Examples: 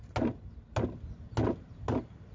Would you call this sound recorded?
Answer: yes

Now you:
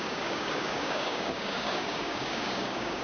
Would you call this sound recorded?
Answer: no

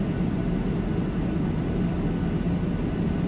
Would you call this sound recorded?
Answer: yes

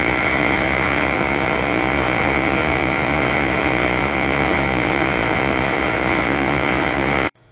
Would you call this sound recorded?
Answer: no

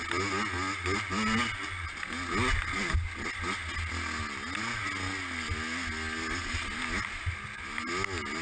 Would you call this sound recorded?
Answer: yes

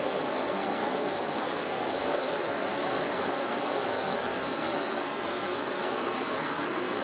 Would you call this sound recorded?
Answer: no